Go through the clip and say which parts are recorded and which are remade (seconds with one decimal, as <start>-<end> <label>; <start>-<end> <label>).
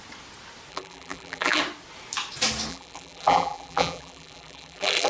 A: 0.0-0.7 recorded; 0.7-1.6 remade; 1.6-2.7 recorded; 2.7-5.1 remade